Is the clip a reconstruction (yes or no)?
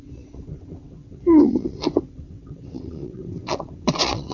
yes